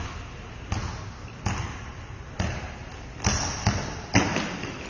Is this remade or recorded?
recorded